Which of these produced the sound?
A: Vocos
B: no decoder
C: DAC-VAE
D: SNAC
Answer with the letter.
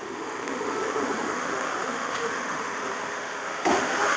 C